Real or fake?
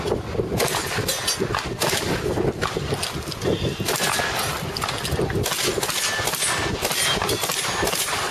real